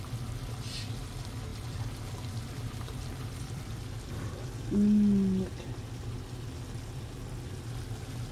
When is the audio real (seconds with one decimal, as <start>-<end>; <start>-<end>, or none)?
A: 0.0-1.5; 3.9-8.3